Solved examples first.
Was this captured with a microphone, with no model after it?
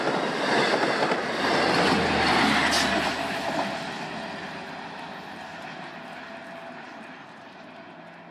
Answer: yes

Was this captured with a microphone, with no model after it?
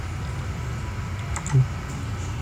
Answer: yes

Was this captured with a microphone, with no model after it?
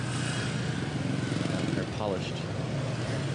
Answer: yes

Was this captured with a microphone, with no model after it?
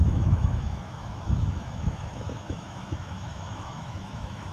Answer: no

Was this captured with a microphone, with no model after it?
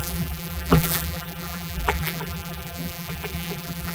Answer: no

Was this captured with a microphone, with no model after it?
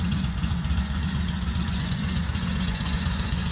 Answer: no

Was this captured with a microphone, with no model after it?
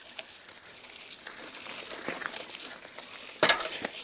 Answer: yes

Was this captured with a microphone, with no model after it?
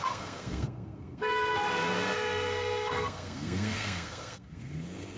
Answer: no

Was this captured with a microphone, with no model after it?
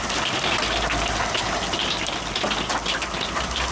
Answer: yes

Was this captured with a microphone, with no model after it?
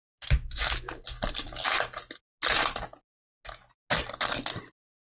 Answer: yes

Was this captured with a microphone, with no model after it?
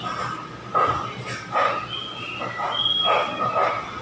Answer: yes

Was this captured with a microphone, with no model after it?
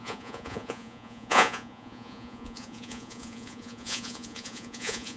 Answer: no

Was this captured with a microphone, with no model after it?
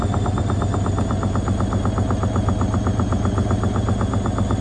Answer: yes